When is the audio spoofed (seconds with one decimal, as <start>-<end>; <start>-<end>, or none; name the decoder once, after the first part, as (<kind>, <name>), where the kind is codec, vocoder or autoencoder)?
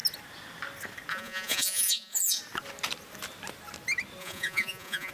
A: 1.1-2.4 (vocoder, Vocos); 4.2-5.1